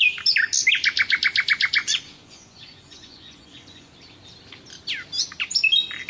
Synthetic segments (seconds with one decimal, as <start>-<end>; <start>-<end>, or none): 1.8-3.9